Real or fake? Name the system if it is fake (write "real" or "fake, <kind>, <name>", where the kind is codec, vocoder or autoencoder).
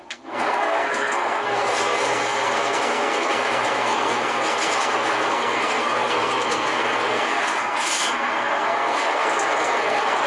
fake, codec, SNAC